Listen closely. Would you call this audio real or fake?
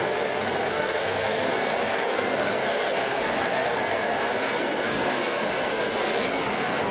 fake